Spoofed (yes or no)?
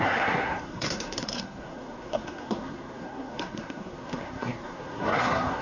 yes